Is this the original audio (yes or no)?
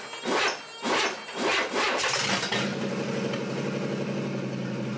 yes